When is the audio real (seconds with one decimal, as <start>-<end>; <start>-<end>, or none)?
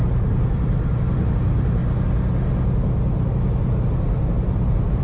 1.8-4.3